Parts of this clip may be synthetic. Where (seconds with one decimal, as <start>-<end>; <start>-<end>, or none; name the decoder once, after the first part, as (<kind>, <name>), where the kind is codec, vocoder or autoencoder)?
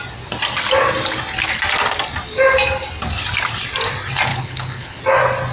4.3-5.0 (codec, HILCodec)